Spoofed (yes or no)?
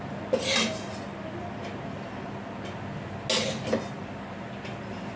no